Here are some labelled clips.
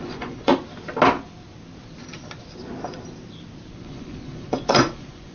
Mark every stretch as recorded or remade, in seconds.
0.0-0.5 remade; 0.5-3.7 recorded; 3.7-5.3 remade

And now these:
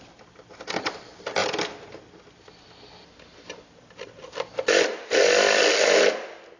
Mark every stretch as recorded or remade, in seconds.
0.0-6.6 recorded